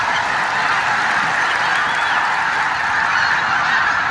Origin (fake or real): real